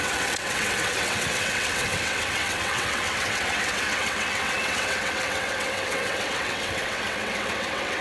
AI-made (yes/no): yes